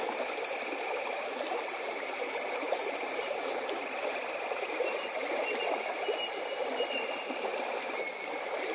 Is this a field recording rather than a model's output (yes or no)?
yes